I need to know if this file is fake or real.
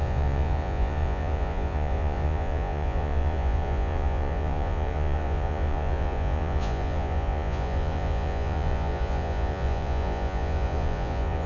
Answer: fake